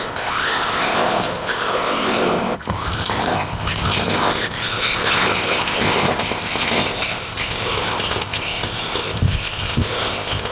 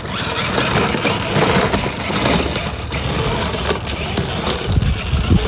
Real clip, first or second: second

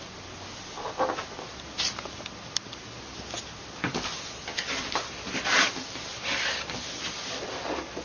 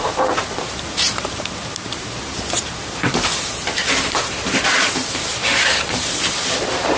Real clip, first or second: first